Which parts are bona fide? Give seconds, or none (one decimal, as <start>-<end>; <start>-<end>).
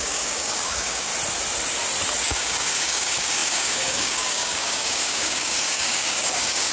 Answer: 1.1-2.2